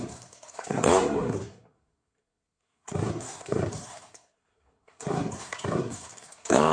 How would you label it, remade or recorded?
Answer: remade